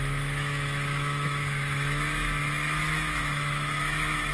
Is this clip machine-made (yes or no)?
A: yes